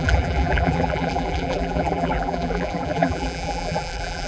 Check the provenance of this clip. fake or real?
fake